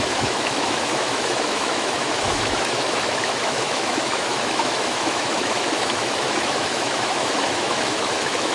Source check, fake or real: fake